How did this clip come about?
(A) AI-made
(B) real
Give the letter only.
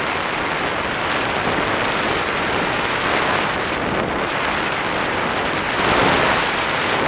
A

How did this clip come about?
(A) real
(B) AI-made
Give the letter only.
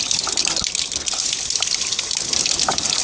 A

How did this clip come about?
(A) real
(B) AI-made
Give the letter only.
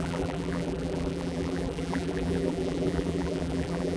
B